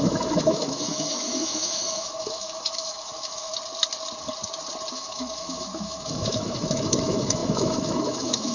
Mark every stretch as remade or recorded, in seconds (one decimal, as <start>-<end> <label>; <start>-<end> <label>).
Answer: 0.0-3.5 remade; 3.5-4.9 recorded; 4.9-8.5 remade